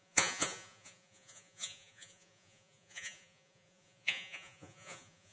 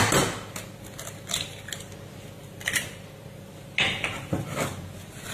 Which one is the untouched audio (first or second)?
second